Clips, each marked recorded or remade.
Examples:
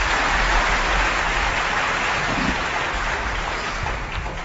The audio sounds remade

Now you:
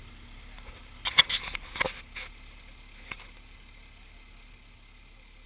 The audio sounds recorded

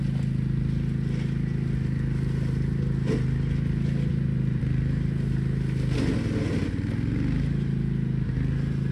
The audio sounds recorded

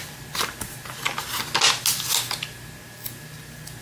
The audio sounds recorded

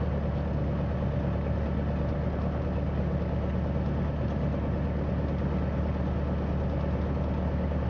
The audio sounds recorded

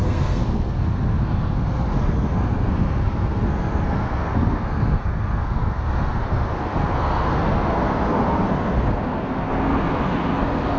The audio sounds remade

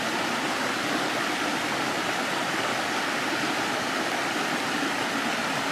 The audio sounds recorded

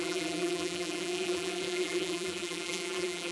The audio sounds remade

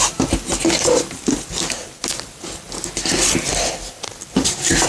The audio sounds recorded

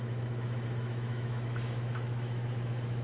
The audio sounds remade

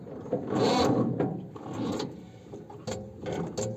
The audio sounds recorded